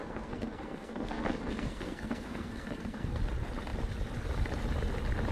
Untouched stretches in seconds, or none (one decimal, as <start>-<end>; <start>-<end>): 3.2-5.3